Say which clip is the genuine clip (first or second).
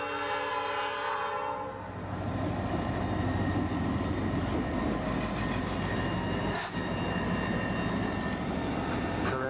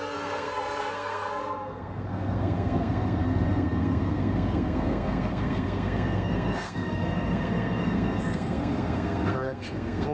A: first